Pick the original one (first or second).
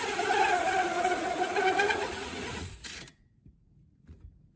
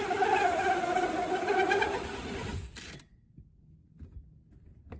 second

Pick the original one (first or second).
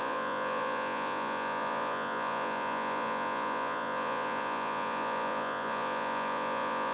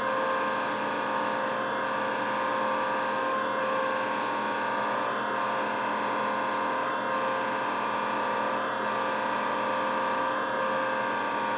second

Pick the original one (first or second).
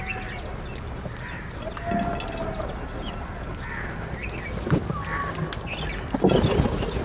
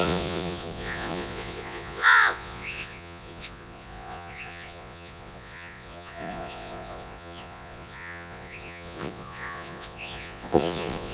first